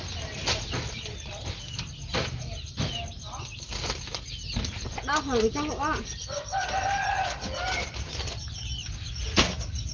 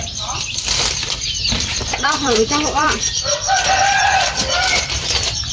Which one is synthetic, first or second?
second